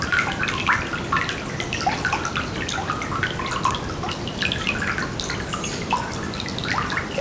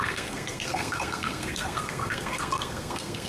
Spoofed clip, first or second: second